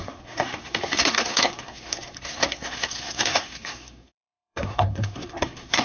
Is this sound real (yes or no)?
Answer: no